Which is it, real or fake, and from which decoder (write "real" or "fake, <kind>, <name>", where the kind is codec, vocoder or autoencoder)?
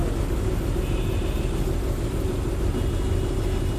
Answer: real